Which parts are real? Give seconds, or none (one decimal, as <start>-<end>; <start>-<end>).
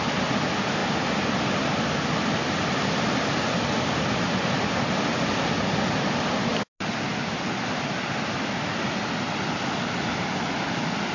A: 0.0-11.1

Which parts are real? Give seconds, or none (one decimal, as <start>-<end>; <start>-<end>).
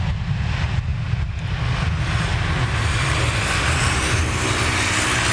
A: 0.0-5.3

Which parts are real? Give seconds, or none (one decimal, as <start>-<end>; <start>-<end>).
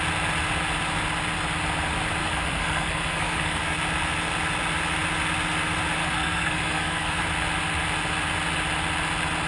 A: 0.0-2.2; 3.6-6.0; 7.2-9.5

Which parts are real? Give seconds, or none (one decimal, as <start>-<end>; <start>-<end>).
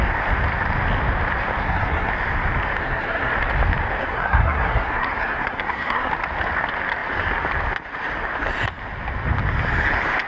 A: 0.0-1.6; 2.1-2.8; 3.3-4.0; 6.1-10.3